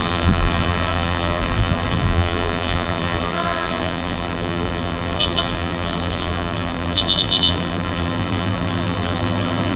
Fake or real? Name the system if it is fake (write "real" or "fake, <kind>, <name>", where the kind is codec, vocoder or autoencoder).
fake, vocoder, BigVGAN v2